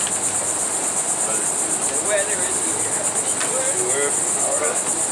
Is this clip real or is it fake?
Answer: real